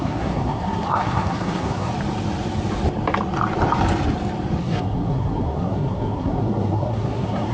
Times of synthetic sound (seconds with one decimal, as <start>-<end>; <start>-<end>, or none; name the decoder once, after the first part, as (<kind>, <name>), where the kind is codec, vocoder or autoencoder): 0.0-1.9 (codec, SNAC); 4.6-7.5